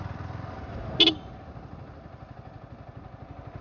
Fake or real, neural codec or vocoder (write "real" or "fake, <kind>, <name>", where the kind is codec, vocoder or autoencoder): real